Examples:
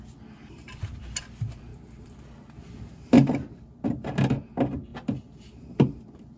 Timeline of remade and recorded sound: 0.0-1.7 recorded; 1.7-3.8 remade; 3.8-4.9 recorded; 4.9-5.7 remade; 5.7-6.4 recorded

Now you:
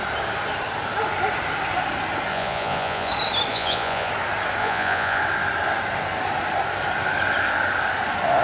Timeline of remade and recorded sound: 0.0-2.3 recorded; 2.3-3.1 remade; 3.1-3.5 recorded; 3.5-4.1 remade; 4.1-4.6 recorded; 4.6-5.2 remade; 5.2-8.4 recorded

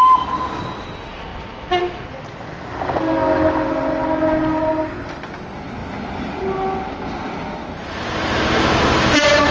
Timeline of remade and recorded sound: 0.0-9.5 recorded

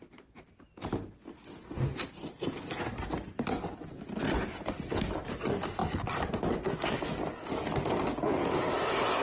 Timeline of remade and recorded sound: 0.0-9.2 recorded

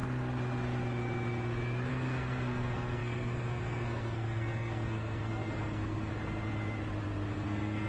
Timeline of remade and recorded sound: 0.0-1.9 recorded; 1.9-6.1 remade; 6.1-7.3 recorded; 7.3-7.9 remade

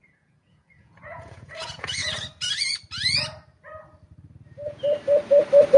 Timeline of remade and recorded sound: 0.0-2.0 remade; 2.0-5.8 recorded

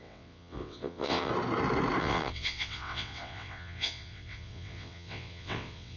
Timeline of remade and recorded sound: 0.0-1.3 remade; 1.3-2.0 recorded; 2.0-6.0 remade

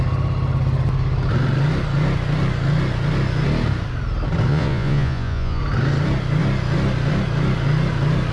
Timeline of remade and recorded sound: 0.0-4.5 recorded; 4.5-5.6 remade; 5.6-8.3 recorded